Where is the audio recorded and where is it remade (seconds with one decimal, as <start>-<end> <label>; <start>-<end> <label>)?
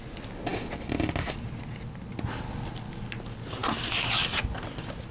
0.0-5.1 recorded